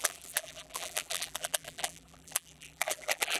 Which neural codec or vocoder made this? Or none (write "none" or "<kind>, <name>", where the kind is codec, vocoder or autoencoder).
vocoder, BigVGAN v2